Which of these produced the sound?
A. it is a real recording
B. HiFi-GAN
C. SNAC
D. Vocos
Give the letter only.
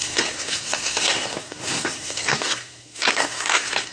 C